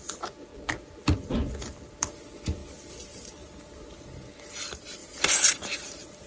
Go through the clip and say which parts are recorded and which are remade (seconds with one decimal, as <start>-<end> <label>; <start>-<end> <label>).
0.0-2.6 recorded; 2.6-3.9 remade; 3.9-5.0 recorded; 5.0-6.3 remade